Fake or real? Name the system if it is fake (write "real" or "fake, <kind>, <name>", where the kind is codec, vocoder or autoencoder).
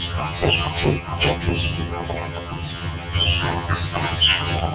fake, vocoder, HiFi-GAN